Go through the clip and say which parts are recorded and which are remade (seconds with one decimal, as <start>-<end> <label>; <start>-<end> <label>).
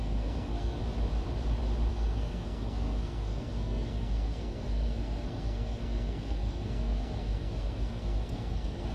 0.0-0.8 remade; 0.8-1.9 recorded; 1.9-8.9 remade